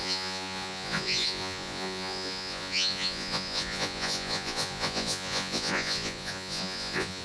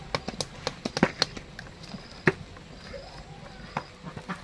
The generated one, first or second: first